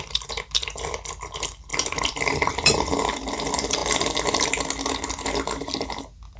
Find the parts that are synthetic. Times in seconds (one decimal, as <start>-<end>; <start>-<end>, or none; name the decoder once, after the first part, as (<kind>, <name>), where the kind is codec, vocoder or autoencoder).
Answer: 1.7-3.3 (vocoder, BigVGAN v2); 3.8-4.5